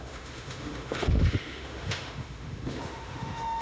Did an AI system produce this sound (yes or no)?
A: yes